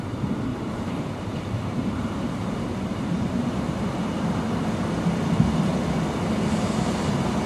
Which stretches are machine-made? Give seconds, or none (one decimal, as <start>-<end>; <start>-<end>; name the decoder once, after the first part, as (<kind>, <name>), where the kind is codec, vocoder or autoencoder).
0.5-4.0 (vocoder, BigVGAN v2)